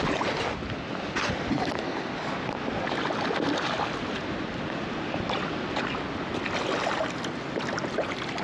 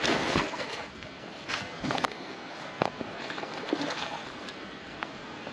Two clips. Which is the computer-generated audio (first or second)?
second